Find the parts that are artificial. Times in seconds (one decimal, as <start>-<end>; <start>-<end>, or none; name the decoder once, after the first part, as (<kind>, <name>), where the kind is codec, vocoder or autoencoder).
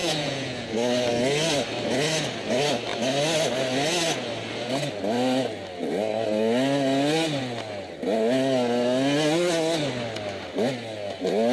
0.0-0.7 (vocoder, Vocos)